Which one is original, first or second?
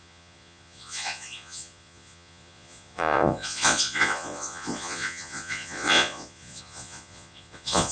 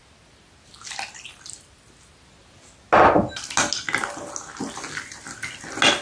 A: second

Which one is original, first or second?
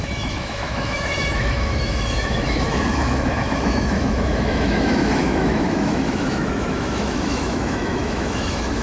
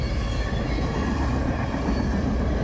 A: second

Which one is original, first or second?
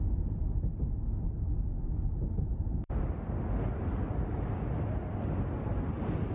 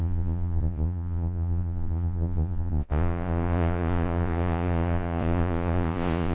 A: first